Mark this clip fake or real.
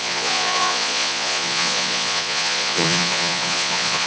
fake